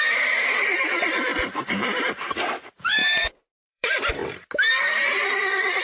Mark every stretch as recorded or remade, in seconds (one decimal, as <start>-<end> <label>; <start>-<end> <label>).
0.0-3.0 remade; 3.0-3.6 recorded; 3.6-4.2 remade; 4.2-5.8 recorded